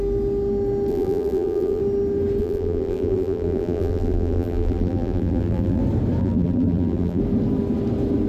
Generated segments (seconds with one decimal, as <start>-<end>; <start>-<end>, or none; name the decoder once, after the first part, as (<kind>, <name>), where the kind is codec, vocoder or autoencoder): 0.9-1.8 (vocoder, BigVGAN v2); 2.4-5.8; 6.2-7.2